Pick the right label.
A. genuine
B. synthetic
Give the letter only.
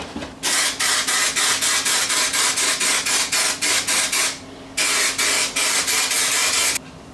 A